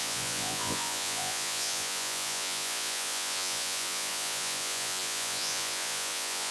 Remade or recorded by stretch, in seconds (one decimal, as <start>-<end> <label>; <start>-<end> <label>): 0.0-6.5 remade